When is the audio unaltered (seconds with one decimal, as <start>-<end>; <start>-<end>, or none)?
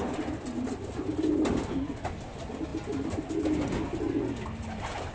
0.0-5.1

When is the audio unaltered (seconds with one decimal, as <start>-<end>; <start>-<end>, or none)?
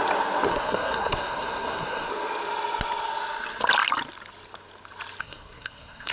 0.0-0.5; 2.1-5.2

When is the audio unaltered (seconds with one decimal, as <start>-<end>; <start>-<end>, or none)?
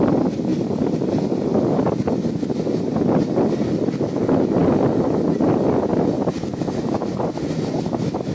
0.0-8.3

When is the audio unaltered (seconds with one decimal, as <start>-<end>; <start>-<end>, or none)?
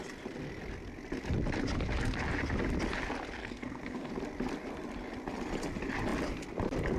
0.0-3.4; 4.1-7.0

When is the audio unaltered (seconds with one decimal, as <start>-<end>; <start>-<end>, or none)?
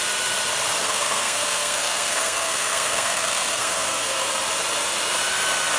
0.0-0.8; 4.3-5.8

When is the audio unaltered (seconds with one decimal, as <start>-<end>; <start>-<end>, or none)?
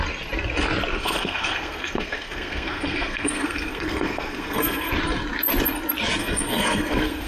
0.0-1.0; 4.9-6.2